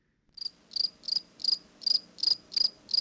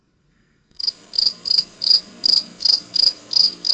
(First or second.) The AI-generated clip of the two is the second